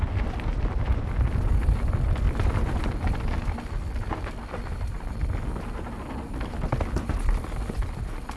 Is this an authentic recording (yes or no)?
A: yes